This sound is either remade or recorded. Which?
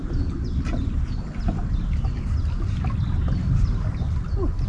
recorded